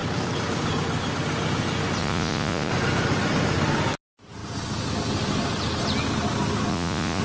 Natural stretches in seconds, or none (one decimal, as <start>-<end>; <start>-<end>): 0.0-2.0; 2.7-6.7